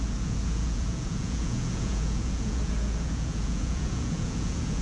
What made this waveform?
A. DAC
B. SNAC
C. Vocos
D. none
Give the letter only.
C